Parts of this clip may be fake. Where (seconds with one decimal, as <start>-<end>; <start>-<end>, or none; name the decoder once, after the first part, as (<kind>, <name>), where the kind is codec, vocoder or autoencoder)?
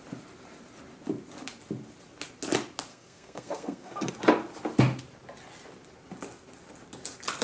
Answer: 2.9-4.1 (codec, SNAC)